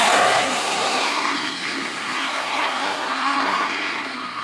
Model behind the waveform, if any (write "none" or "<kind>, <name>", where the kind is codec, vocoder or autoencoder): codec, SNAC